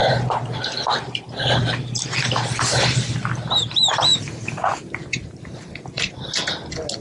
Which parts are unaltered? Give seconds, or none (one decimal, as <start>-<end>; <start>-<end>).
3.5-4.1; 5.4-7.0